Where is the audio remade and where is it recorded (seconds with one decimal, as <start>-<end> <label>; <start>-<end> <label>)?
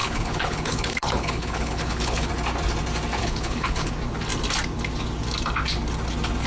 0.0-2.3 remade; 2.3-3.2 recorded; 3.2-3.9 remade; 3.9-6.5 recorded